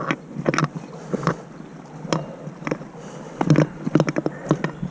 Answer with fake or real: real